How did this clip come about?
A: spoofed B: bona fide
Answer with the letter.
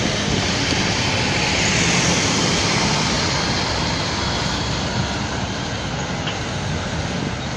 B